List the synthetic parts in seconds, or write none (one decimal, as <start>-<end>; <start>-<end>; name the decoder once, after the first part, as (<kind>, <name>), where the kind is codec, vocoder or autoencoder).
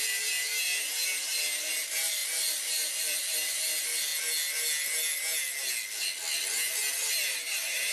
0.0-4.1 (vocoder, BigVGAN v2); 7.1-7.9